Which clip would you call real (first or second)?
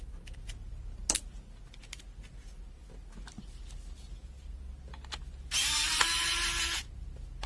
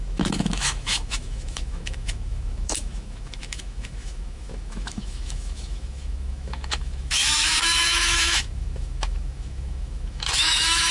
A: first